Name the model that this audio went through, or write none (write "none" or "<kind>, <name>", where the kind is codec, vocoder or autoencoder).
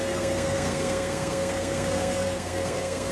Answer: codec, SNAC